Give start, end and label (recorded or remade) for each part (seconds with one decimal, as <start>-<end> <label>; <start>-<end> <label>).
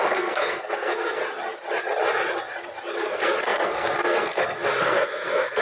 0.0-1.2 remade; 1.2-3.0 recorded; 3.0-5.6 remade